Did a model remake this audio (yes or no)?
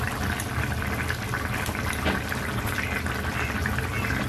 no